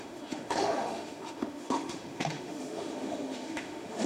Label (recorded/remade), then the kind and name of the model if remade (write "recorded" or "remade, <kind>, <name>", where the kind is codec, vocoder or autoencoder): remade, autoencoder, DAC-VAE